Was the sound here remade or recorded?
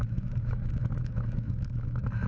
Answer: remade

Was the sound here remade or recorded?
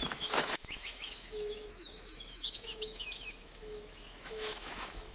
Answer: remade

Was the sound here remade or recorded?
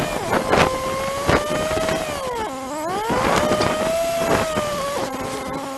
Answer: recorded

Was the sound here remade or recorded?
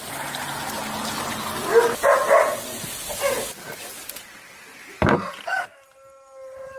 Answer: recorded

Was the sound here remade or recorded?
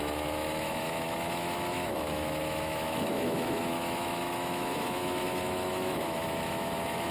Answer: remade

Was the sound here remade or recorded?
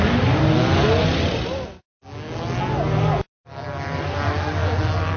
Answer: recorded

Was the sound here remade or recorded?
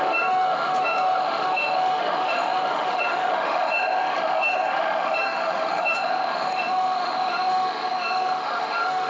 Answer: remade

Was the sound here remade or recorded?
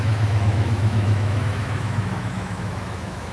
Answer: remade